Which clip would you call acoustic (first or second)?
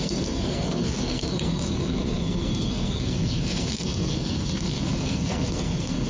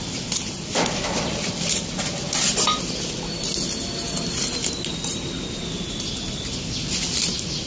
second